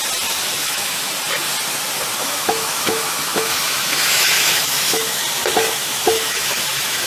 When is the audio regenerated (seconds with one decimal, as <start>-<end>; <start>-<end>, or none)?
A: 0.5-1.1; 2.2-5.2; 5.8-7.1